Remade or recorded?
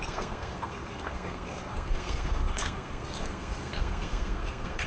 remade